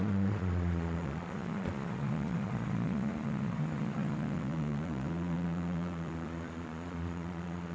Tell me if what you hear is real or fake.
fake